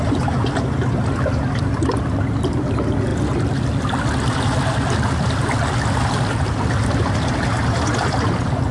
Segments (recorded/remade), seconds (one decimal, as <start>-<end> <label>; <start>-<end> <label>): 0.0-8.7 recorded